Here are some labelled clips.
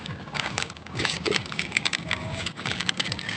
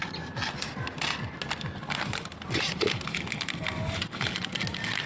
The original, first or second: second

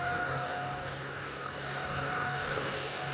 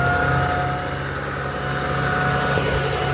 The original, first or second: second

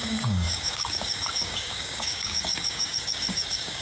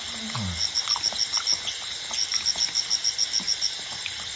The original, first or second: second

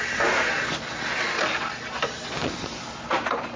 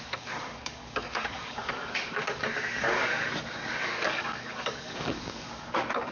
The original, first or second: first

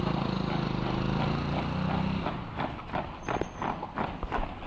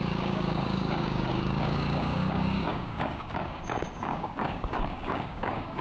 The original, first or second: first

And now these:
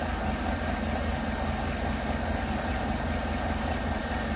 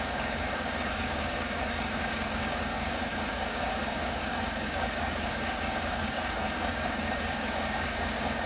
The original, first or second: first